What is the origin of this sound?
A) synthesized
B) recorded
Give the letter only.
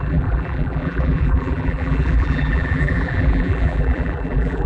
A